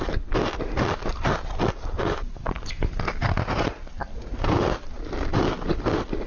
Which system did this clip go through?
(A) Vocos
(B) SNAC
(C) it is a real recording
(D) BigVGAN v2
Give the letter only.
C